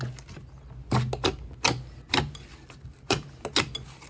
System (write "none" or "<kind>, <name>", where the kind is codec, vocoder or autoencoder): none